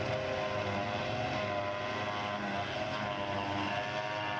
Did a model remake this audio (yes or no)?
no